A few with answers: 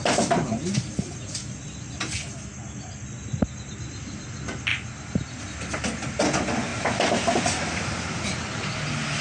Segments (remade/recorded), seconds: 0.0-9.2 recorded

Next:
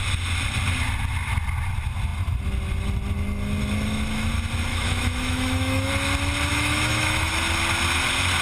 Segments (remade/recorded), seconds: 0.0-4.7 recorded; 4.7-5.9 remade; 5.9-6.5 recorded; 6.5-7.3 remade; 7.3-8.4 recorded

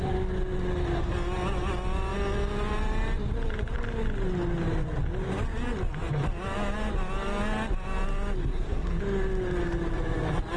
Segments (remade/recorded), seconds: 0.0-8.4 recorded; 8.4-9.0 remade; 9.0-10.6 recorded